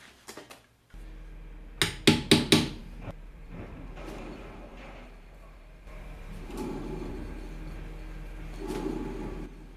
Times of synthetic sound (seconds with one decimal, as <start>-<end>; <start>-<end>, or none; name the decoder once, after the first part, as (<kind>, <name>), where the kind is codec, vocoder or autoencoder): 2.8-7.1 (vocoder, BigVGAN v2)